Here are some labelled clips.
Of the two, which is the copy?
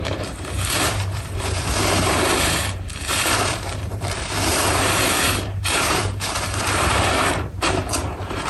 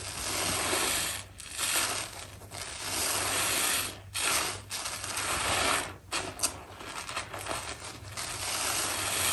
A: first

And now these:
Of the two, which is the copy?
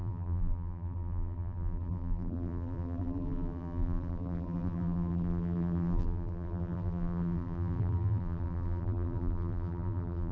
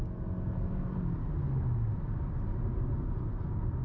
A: first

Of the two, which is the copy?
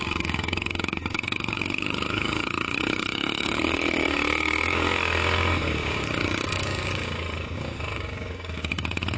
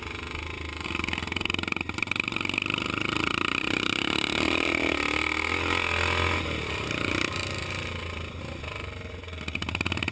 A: first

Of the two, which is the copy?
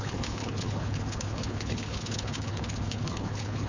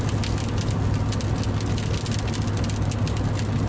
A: first